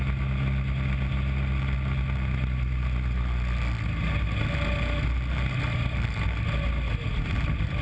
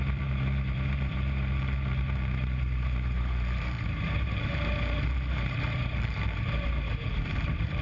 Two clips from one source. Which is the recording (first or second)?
first